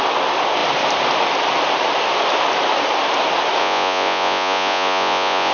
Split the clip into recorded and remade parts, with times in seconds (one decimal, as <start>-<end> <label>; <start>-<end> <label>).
0.0-3.6 recorded; 3.6-5.5 remade